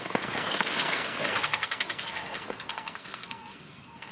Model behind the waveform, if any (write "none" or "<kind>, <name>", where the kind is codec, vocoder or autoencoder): codec, SNAC